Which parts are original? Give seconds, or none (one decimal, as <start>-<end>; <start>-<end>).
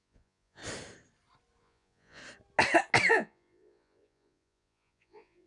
0.6-1.6; 2.2-3.1